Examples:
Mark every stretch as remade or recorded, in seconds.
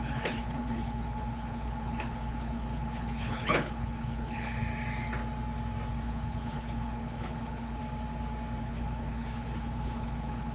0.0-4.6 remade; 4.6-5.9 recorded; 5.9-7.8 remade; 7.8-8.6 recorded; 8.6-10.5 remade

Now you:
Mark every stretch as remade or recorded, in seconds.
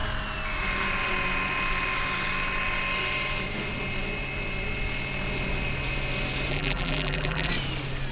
0.0-6.5 recorded; 6.5-7.5 remade; 7.5-8.1 recorded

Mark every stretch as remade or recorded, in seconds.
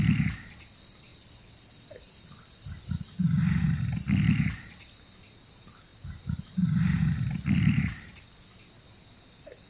0.0-1.1 recorded; 1.1-1.9 remade; 1.9-5.9 recorded; 5.9-8.1 remade; 8.1-9.7 recorded